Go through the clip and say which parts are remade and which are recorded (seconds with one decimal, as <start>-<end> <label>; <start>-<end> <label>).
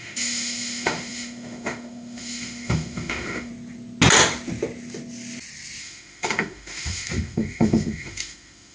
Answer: 0.0-3.5 remade; 3.5-5.8 recorded; 5.8-8.7 remade